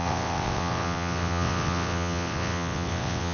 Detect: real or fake fake